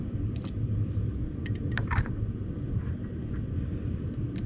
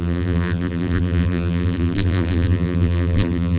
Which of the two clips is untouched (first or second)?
first